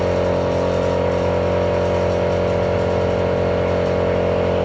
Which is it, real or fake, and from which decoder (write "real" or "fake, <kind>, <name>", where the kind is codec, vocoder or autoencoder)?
real